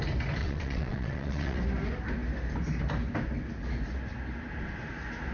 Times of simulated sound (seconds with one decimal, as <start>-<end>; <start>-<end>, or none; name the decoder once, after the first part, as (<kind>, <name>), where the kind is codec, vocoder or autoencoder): 0.4-1.6 (vocoder, WaveNeXt)